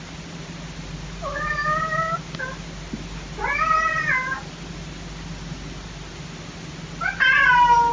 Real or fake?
real